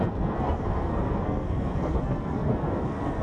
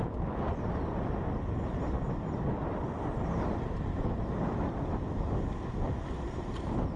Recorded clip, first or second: second